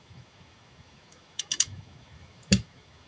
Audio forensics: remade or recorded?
remade